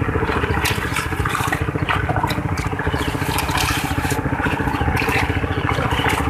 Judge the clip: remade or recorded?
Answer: recorded